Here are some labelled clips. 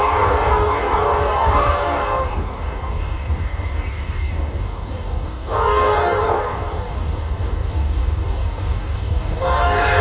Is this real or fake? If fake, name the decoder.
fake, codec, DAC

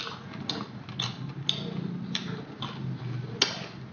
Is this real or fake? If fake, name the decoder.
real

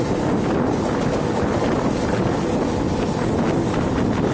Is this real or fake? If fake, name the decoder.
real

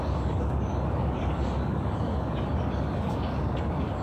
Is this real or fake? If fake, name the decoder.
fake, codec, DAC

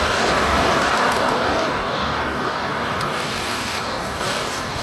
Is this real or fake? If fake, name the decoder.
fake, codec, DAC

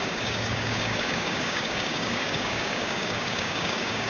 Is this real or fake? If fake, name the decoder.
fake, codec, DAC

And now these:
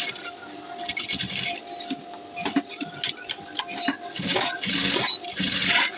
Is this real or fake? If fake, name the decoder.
real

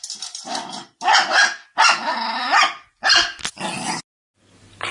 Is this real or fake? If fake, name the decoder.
real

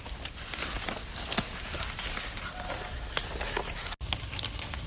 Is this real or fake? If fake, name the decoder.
real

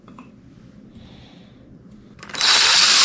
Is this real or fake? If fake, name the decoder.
real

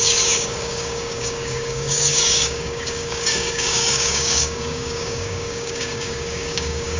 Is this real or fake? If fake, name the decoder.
fake, codec, DAC